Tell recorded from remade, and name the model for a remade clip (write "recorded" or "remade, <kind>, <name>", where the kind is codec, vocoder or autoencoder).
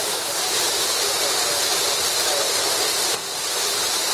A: recorded